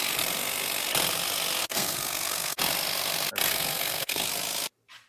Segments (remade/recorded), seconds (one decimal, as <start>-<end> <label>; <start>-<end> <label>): 0.0-1.6 recorded; 1.6-2.6 remade; 2.6-3.5 recorded; 3.5-4.3 remade; 4.3-5.1 recorded